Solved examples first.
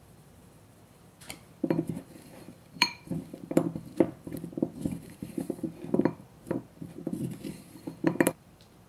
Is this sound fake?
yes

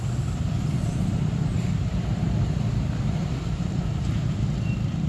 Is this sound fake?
yes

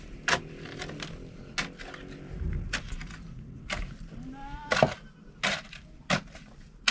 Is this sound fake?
no